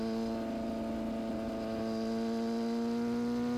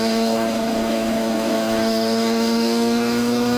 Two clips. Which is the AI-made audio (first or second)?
second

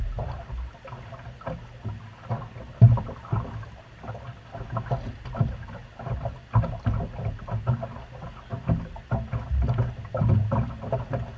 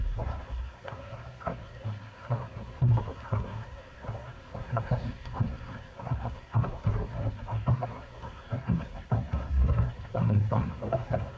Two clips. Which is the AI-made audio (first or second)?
second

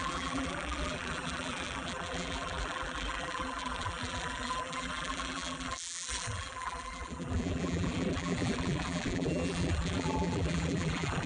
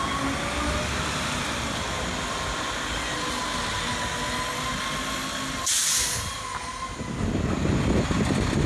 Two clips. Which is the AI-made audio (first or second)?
first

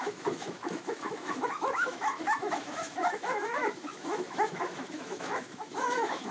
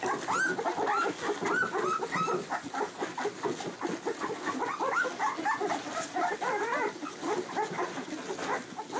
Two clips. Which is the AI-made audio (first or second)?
first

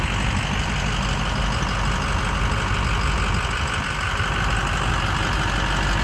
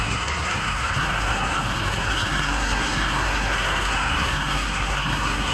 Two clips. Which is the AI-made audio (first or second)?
second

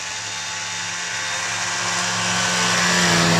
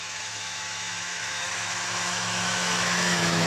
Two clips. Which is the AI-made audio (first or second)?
second